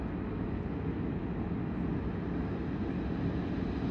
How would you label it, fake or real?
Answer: real